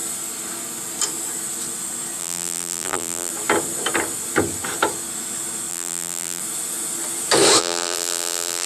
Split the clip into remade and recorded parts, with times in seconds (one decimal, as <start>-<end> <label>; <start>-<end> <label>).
0.0-2.2 recorded; 2.2-3.3 remade; 3.3-5.7 recorded; 5.7-6.4 remade; 6.4-7.6 recorded; 7.6-8.7 remade